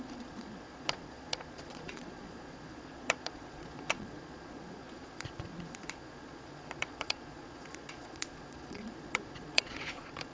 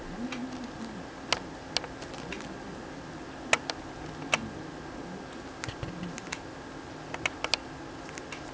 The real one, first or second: second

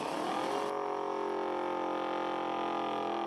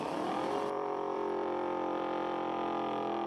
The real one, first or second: first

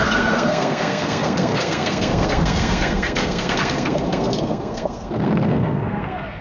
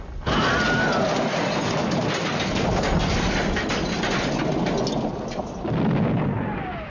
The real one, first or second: second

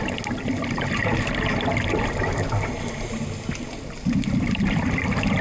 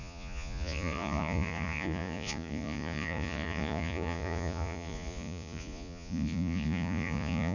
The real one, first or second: first